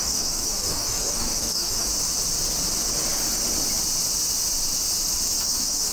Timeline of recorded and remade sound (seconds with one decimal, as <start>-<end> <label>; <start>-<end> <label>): 0.0-1.9 remade; 1.9-5.4 recorded; 5.4-5.9 remade